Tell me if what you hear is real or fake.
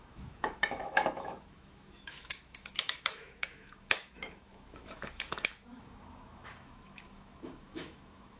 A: fake